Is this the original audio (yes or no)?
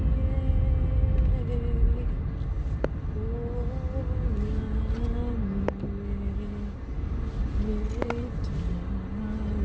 yes